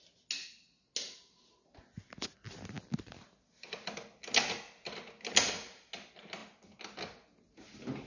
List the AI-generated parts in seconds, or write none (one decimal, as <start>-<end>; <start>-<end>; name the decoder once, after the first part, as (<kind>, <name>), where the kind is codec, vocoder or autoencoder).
none